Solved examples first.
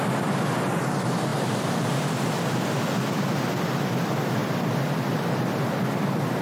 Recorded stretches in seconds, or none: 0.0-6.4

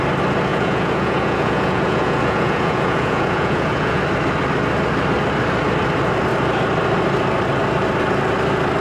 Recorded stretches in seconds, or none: 0.0-0.5; 4.0-8.8

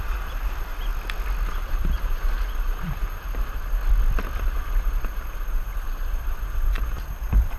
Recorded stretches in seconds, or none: 0.9-1.5; 3.8-4.4